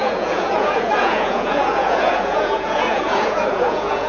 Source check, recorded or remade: remade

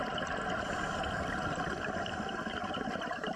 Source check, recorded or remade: recorded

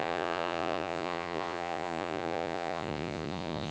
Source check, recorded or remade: remade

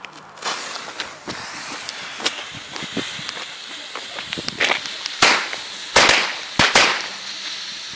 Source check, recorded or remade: recorded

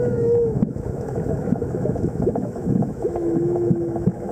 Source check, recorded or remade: remade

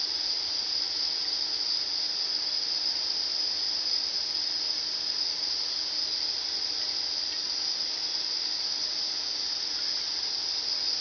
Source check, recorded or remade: recorded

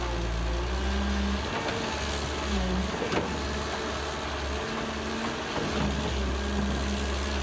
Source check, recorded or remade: recorded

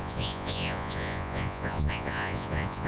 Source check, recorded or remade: remade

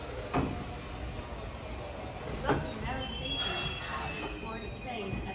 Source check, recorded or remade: recorded